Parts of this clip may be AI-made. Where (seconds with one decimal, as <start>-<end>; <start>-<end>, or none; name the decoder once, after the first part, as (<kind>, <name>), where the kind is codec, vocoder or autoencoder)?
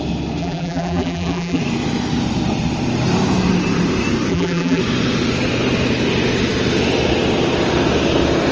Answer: 0.4-1.6 (vocoder, BigVGAN v2); 4.3-4.8